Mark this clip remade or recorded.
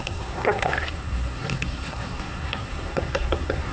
remade